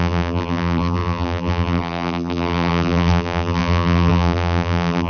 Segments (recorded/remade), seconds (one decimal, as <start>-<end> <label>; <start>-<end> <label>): 0.0-5.1 remade